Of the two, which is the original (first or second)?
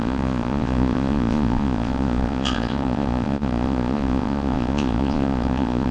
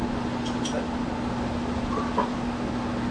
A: second